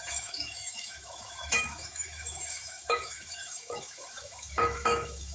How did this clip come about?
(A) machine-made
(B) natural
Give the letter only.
A